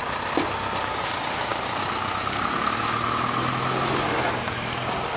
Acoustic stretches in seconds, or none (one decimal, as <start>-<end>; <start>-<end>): 0.0-5.2